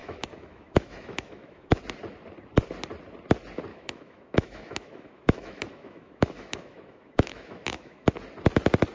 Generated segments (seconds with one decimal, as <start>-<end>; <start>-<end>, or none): 0.0-1.8; 3.7-8.1